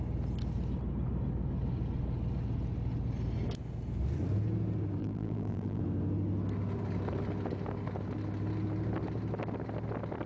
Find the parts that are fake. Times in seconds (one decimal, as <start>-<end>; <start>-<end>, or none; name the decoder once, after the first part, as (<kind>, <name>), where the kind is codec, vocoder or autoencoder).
5.0-5.8 (vocoder, BigVGAN v2)